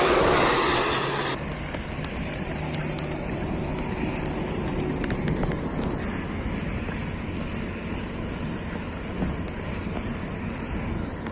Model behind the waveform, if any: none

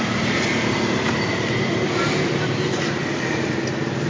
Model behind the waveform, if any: none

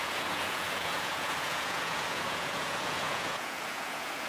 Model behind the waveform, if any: vocoder, Vocos